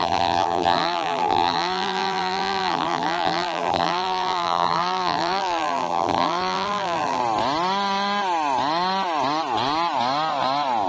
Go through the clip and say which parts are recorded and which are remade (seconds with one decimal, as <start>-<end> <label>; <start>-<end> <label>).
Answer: 0.0-7.2 remade; 7.2-10.9 recorded